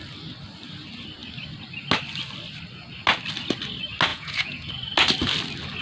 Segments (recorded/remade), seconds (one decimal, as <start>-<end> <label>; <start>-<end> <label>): 0.0-4.1 recorded; 4.1-4.7 remade; 4.7-5.8 recorded